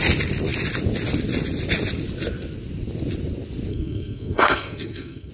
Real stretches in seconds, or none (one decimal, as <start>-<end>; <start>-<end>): 0.0-3.7